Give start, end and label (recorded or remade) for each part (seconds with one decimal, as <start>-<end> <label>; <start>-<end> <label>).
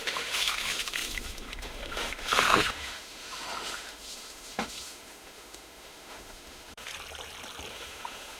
0.0-6.9 remade; 6.9-7.7 recorded; 7.7-8.4 remade